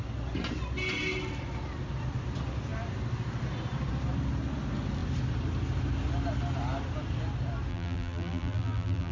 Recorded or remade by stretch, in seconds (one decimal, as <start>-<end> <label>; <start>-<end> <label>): 0.0-7.7 recorded; 7.7-9.1 remade